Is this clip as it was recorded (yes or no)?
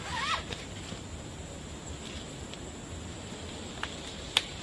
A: yes